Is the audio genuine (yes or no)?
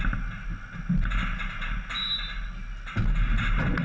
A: yes